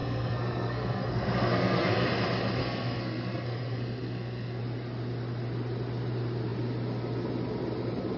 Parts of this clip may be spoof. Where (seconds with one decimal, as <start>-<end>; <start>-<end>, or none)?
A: 0.0-2.1; 2.6-4.6